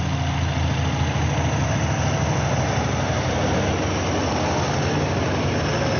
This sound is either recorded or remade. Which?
recorded